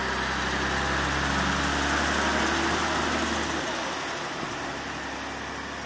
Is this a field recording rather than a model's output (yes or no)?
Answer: yes